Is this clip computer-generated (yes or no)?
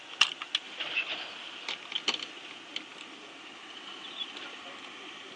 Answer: no